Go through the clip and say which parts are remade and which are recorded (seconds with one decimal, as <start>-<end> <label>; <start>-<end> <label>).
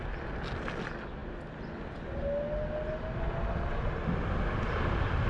0.0-5.3 recorded